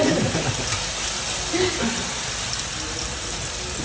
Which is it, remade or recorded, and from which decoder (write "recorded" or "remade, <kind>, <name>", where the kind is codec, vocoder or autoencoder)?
recorded